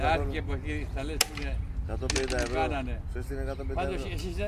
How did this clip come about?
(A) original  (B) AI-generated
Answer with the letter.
A